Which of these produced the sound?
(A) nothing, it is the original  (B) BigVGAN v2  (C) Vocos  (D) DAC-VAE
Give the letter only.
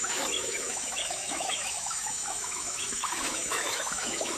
D